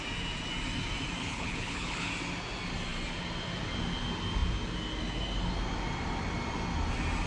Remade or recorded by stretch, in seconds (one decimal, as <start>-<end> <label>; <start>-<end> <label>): 0.0-1.2 recorded; 1.2-2.1 remade; 2.1-7.3 recorded